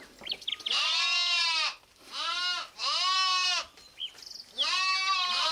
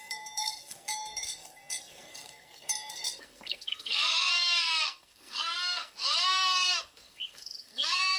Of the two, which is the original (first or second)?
first